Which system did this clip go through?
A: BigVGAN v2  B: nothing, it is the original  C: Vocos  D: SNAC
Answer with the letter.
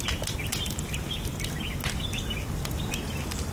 B